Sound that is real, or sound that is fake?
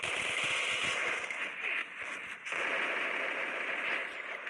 real